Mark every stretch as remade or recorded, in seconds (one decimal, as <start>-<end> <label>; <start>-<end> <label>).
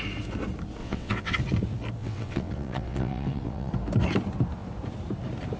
0.0-0.8 recorded; 0.8-1.4 remade; 1.4-2.0 recorded; 2.0-3.7 remade; 3.7-5.6 recorded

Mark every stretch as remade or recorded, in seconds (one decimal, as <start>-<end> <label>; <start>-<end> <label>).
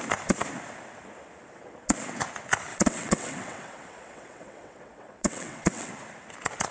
0.0-2.7 recorded; 2.7-5.9 remade; 5.9-6.7 recorded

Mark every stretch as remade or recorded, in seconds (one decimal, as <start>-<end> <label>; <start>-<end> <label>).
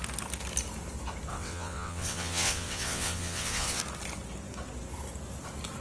0.0-1.3 recorded; 1.3-3.8 remade; 3.8-5.8 recorded